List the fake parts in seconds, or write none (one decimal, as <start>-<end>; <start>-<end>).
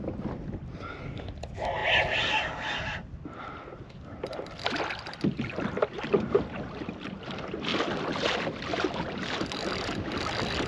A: none